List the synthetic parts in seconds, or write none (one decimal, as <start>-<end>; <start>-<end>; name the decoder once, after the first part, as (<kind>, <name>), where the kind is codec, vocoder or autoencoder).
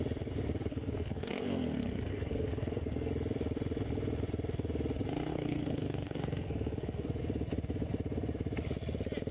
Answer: 0.7-3.1 (codec, SNAC); 5.3-7.2